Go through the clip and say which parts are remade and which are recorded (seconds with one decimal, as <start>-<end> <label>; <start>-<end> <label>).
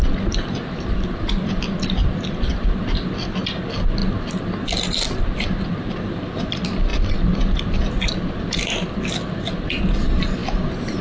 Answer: 0.0-10.4 recorded; 10.4-11.0 remade